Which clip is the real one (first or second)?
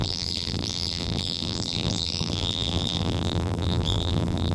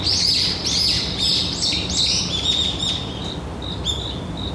second